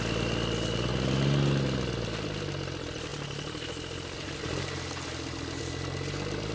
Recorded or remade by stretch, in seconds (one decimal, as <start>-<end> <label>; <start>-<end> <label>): 0.0-6.5 recorded